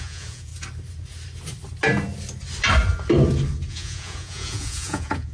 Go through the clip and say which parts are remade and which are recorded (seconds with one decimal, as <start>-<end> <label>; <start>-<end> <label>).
0.0-0.5 remade; 0.5-3.7 recorded; 3.7-5.3 remade